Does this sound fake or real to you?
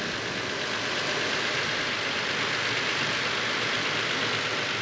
real